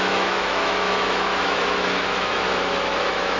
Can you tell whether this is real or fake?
fake